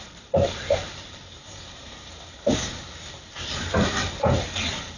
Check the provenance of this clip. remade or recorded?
remade